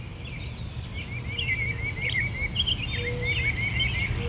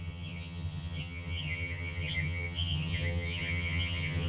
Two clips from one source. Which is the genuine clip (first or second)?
first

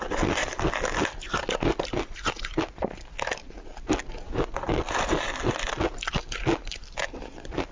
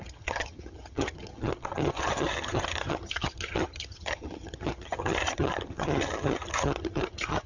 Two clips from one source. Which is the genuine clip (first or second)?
first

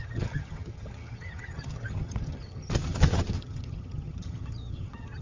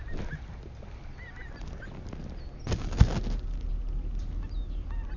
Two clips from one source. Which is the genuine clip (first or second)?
second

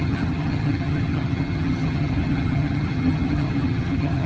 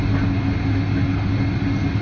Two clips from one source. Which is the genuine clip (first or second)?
second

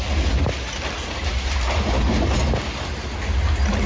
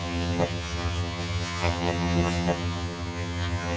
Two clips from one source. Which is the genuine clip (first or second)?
first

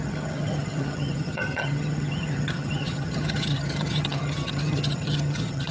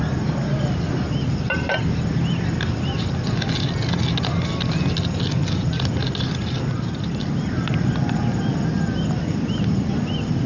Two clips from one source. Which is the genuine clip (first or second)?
second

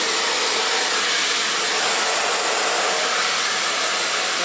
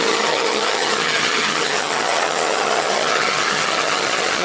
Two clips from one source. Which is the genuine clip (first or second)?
first